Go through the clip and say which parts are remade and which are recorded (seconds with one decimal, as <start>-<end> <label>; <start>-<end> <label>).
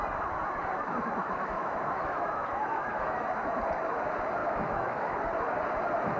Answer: 0.0-1.2 recorded; 1.2-3.2 remade; 3.2-4.4 recorded; 4.4-5.2 remade; 5.2-6.2 recorded